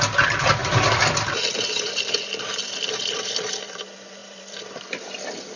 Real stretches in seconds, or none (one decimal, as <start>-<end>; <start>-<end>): 0.0-0.6; 3.8-4.2